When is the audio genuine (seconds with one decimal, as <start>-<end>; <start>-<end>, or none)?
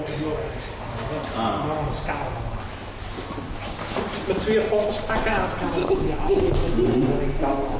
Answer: 0.0-5.8; 6.4-7.8